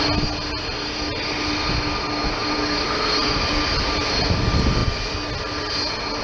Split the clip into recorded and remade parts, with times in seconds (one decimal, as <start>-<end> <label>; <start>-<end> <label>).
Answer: 0.0-6.2 recorded